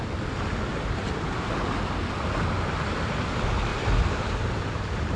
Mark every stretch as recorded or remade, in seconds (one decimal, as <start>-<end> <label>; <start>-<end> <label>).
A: 0.0-0.7 recorded; 0.7-1.6 remade; 1.6-3.7 recorded; 3.7-5.2 remade